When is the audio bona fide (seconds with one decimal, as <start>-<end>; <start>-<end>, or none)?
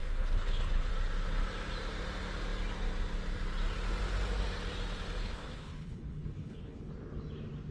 0.9-5.2; 6.9-7.7